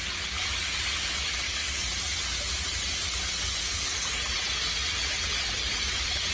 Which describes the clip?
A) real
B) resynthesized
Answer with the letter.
A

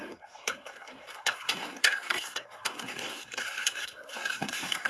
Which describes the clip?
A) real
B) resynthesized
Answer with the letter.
B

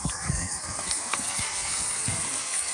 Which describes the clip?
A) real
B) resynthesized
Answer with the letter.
B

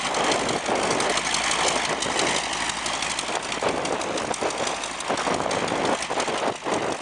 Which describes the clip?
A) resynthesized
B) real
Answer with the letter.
B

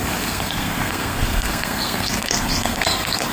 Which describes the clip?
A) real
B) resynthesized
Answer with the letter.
B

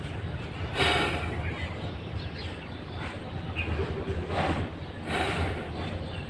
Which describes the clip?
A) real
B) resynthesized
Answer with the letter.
A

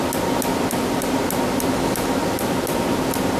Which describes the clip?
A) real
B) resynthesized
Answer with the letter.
A